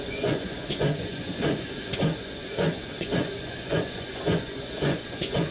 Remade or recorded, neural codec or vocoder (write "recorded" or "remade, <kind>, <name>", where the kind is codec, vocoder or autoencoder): remade, vocoder, Vocos